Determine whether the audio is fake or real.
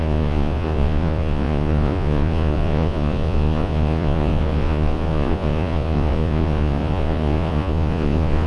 fake